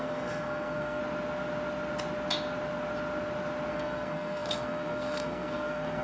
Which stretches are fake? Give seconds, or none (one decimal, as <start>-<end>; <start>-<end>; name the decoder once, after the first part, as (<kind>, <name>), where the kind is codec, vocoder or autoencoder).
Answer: 0.0-1.0 (codec, SNAC); 3.7-6.0